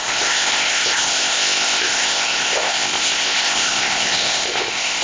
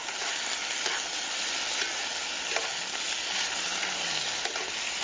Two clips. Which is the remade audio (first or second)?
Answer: first